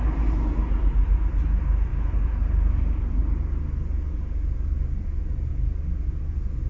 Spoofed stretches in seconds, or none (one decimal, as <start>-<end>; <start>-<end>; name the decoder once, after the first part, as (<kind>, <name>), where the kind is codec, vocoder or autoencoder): 1.9-3.2 (vocoder, BigVGAN v2)